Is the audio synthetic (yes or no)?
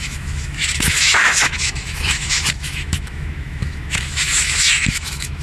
yes